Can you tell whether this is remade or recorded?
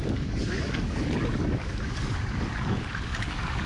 remade